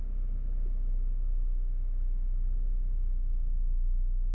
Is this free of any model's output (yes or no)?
yes